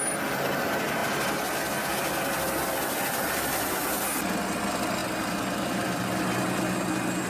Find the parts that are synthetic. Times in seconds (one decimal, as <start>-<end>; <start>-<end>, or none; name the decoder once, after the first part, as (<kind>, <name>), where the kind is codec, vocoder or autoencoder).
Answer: none